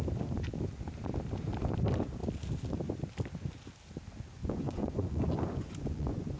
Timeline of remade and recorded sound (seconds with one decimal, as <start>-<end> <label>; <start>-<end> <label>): 0.0-4.4 recorded; 4.4-6.4 remade